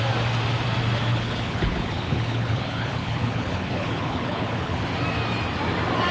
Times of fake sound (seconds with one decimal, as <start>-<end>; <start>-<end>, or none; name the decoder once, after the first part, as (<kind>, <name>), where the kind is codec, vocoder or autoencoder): 1.1-4.8 (codec, HILCodec)